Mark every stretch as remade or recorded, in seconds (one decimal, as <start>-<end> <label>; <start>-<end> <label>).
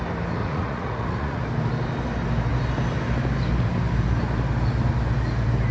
0.0-0.4 recorded; 0.4-1.4 remade; 1.4-5.7 recorded